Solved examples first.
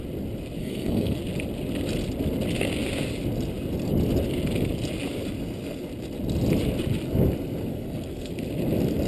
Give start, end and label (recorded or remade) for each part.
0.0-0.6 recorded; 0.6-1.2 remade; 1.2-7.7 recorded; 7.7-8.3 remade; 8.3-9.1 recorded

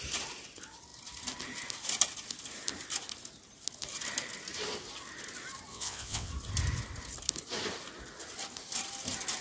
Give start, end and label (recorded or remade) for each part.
0.0-5.7 recorded; 5.7-6.3 remade; 6.3-9.4 recorded

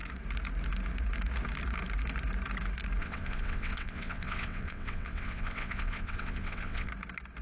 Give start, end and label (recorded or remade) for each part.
0.0-3.0 recorded; 3.0-6.9 remade; 6.9-7.4 recorded

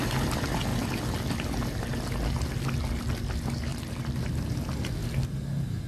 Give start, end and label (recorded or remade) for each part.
0.0-3.7 recorded; 3.7-4.3 remade; 4.3-5.9 recorded